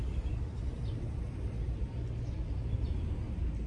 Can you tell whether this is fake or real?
real